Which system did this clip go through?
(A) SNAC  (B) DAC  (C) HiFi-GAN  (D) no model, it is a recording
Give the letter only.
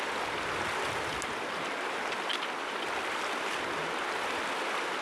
D